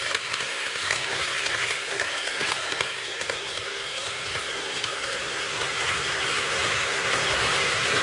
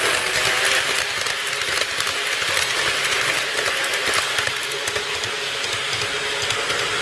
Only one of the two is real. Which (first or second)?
second